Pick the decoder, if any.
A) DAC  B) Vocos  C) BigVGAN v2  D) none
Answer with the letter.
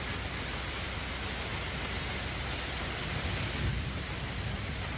D